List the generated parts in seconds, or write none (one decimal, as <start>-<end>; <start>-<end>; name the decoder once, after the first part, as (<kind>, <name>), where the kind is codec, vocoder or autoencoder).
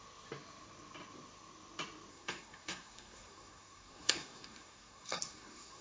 2.1-5.8 (codec, SNAC)